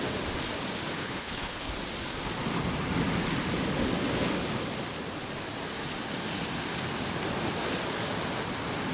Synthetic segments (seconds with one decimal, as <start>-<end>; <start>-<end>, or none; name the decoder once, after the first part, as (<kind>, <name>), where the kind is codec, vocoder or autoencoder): 0.9-1.7 (codec, HILCodec)